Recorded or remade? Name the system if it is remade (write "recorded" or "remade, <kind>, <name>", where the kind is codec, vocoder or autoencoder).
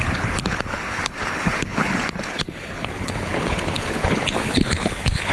remade, codec, HILCodec